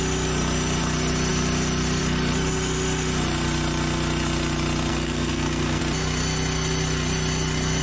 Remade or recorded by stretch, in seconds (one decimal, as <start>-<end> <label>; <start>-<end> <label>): 0.0-4.9 recorded; 4.9-5.8 remade; 5.8-7.8 recorded